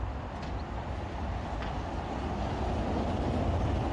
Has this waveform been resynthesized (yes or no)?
no